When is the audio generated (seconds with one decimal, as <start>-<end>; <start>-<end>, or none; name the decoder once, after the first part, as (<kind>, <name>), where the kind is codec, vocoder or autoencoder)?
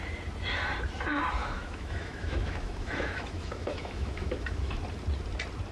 1.4-4.8 (autoencoder, DAC-VAE)